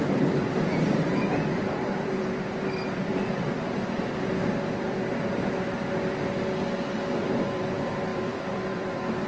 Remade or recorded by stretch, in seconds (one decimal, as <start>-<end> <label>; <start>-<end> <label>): 0.0-3.1 remade; 3.1-7.3 recorded; 7.3-9.3 remade